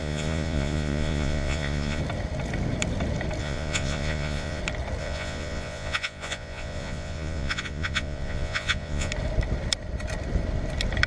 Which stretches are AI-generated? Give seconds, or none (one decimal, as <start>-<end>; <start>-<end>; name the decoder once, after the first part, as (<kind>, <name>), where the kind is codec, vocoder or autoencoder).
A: 0.0-2.0 (vocoder, Vocos); 3.4-4.6; 5.0-9.1

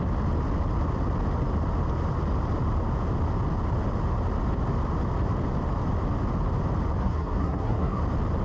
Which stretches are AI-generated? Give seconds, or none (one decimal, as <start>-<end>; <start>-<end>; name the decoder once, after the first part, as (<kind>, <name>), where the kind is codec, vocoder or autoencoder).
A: 7.0-8.0 (codec, SNAC)